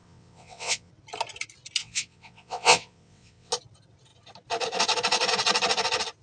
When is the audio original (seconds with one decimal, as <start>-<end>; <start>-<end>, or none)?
0.9-1.8; 3.5-6.2